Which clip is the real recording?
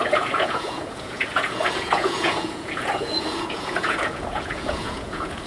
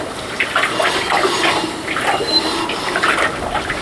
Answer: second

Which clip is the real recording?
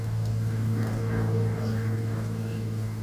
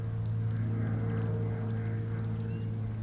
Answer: second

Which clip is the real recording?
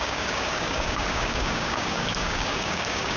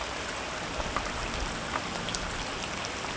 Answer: second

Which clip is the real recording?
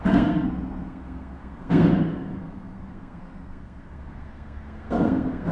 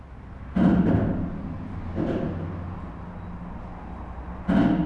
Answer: second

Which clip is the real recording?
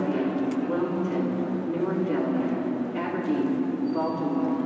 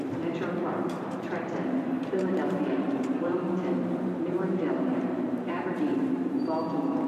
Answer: first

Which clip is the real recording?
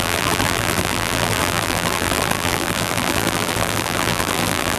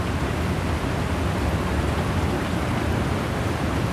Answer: second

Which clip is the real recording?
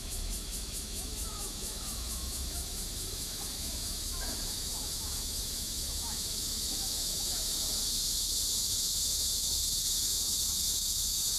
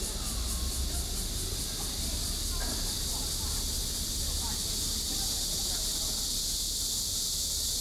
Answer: second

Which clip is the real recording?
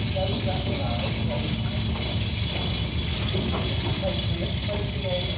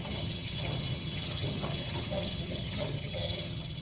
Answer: first